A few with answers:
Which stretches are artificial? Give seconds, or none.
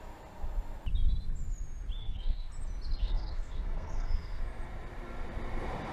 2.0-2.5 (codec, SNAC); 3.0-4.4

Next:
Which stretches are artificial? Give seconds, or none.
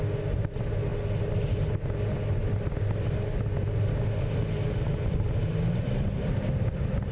none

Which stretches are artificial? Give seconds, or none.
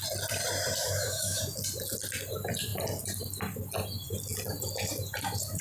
0.8-1.4 (autoencoder, DAC-VAE)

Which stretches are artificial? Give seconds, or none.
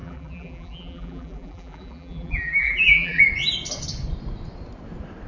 0.0-3.2 (vocoder, BigVGAN v2)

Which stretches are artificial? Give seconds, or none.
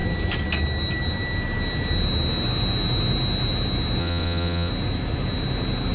4.0-4.7 (vocoder, WaveNeXt)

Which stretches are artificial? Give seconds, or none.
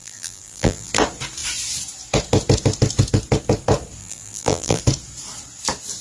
0.0-0.9 (vocoder, BigVGAN v2); 4.0-4.8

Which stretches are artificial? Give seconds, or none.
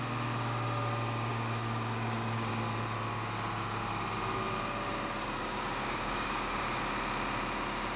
1.3-2.5 (codec, DAC); 5.4-6.8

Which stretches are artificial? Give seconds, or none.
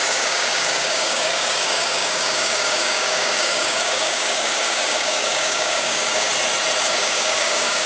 0.0-6.3 (codec, DAC); 6.8-7.9